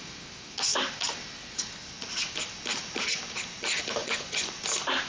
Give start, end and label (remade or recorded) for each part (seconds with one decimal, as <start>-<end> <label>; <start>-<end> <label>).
0.0-4.0 recorded; 4.0-4.5 remade; 4.5-5.1 recorded